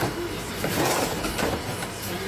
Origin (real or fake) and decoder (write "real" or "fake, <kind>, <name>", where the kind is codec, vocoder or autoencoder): fake, vocoder, BigVGAN v2